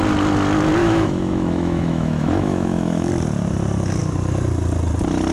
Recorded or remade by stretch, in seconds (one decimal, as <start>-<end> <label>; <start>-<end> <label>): 0.0-0.8 recorded; 0.8-3.1 remade; 3.1-5.3 recorded